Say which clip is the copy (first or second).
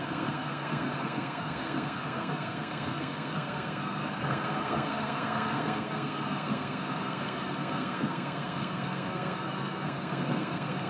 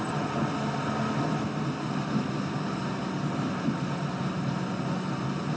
first